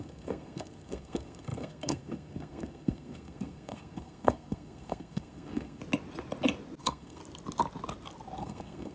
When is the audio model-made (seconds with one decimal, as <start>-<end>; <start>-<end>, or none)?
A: 0.0-5.8; 6.8-7.2; 8.4-8.9

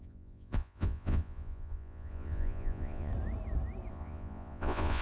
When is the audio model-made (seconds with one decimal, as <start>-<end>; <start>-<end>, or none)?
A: 0.0-3.1; 3.9-5.0

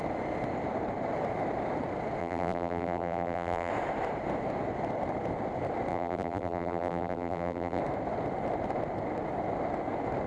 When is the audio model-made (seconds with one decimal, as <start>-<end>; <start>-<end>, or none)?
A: 2.2-3.7; 5.9-7.8

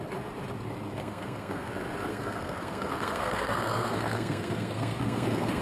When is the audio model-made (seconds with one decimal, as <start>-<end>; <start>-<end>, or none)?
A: 1.0-1.7; 2.1-5.6

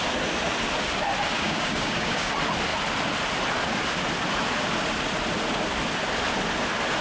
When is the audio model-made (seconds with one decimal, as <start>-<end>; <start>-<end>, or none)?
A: 1.3-2.3

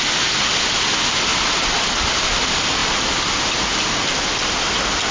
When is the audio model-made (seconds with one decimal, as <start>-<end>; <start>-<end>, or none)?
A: none

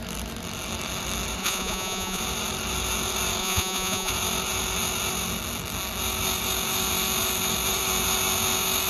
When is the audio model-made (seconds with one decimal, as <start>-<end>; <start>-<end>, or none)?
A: 1.4-2.2; 3.4-4.1